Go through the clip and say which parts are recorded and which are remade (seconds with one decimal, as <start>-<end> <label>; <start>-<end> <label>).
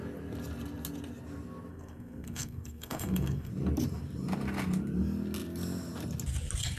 0.0-1.7 recorded; 1.7-3.5 remade; 3.5-6.8 recorded